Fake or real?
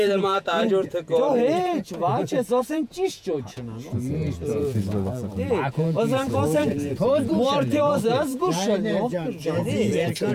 fake